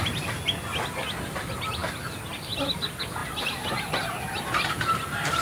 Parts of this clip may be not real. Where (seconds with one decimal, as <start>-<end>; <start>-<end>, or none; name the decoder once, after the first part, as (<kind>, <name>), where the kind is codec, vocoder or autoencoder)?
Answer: 1.8-2.3 (vocoder, BigVGAN v2)